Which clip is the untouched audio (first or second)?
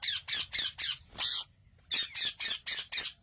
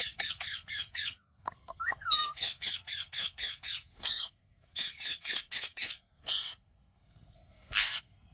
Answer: first